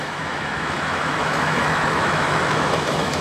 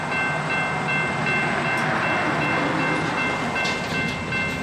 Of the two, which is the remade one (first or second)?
first